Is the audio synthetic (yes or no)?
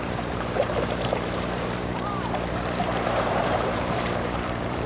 yes